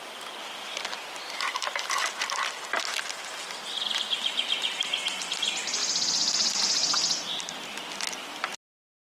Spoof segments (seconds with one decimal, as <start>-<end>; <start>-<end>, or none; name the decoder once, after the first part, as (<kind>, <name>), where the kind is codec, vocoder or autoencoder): none